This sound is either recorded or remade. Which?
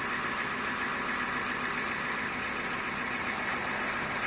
recorded